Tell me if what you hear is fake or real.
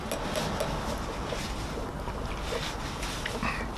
real